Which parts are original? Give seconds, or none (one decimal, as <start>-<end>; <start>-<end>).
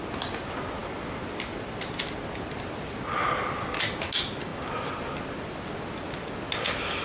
0.0-7.0